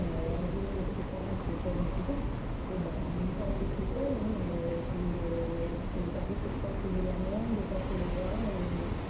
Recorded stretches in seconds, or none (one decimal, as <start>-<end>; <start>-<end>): 0.0-0.9; 2.8-9.1